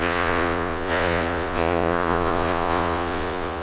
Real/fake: fake